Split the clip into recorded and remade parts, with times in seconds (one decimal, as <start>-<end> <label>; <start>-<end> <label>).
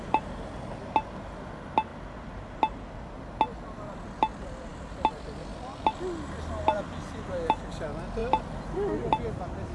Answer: 0.0-9.7 recorded